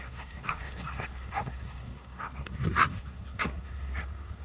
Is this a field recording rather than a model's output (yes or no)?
no